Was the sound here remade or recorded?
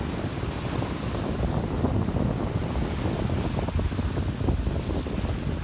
recorded